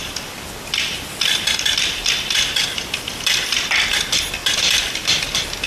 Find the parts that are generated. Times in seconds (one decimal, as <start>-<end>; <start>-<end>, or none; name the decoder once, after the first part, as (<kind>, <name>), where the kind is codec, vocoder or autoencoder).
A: 0.0-3.1 (vocoder, BigVGAN v2)